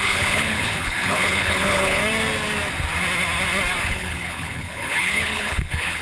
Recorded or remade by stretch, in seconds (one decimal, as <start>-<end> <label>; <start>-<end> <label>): 0.0-2.0 remade; 2.0-3.8 recorded; 3.8-6.0 remade